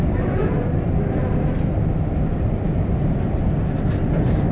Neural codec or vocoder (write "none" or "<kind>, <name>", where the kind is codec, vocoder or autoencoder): none